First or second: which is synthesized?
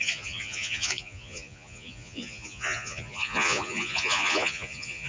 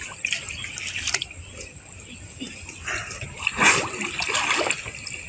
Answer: first